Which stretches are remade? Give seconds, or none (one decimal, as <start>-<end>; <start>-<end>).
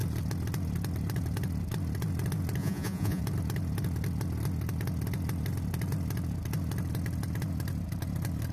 2.6-3.2